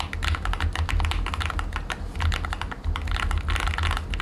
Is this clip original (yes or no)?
yes